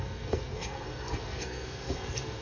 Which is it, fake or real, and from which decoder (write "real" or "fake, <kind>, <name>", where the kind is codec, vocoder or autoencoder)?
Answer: fake, codec, SNAC